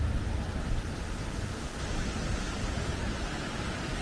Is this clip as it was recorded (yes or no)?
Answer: yes